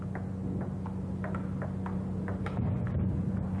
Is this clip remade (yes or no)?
no